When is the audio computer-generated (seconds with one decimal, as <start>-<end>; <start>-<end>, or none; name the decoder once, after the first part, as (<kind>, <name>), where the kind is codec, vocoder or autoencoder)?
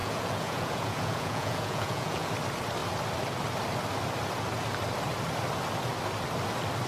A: 0.0-2.3 (vocoder, Vocos)